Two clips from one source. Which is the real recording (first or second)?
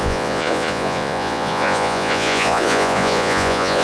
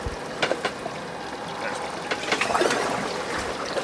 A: second